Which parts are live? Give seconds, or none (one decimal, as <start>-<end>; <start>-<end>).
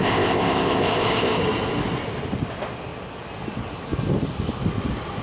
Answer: 1.4-5.2